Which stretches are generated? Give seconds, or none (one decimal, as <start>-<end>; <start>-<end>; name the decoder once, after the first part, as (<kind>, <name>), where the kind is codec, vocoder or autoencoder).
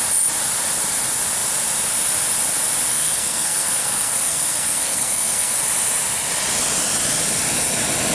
2.9-5.6 (codec, SNAC)